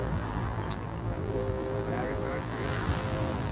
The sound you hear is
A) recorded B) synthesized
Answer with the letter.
B